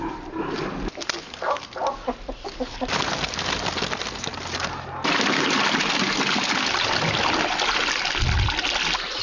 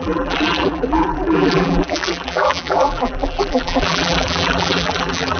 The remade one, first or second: second